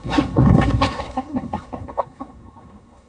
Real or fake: fake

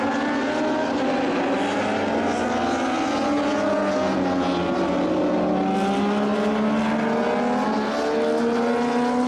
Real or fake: real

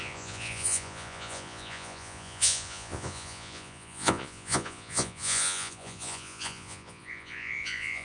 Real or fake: fake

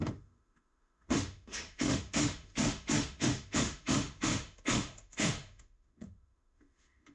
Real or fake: fake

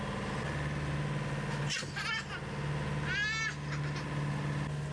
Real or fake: real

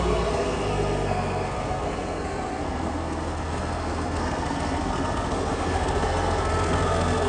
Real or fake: fake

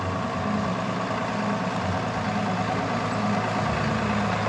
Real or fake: real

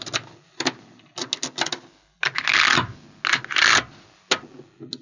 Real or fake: real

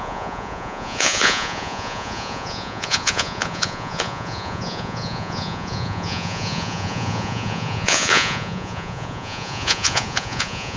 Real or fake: fake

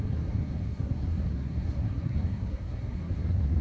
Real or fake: fake